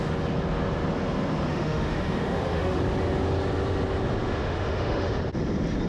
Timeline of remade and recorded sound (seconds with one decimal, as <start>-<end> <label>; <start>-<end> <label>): 0.0-1.5 recorded; 1.5-2.8 remade; 2.8-4.2 recorded; 4.2-5.1 remade; 5.1-5.9 recorded